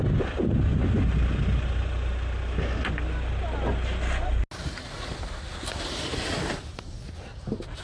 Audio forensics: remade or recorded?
recorded